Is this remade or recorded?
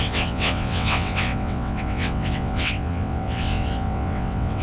remade